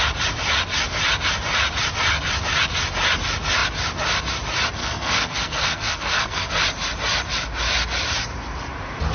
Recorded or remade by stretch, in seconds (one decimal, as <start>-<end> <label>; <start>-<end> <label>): 0.0-4.8 recorded; 4.8-6.5 remade; 6.5-9.1 recorded